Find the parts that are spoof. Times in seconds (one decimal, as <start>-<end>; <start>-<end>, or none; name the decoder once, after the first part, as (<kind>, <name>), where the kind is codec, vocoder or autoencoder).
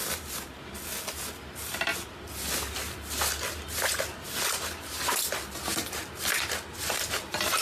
none